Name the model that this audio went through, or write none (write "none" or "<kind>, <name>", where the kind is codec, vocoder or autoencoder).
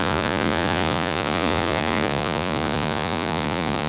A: vocoder, Vocos